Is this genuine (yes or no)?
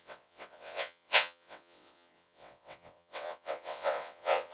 no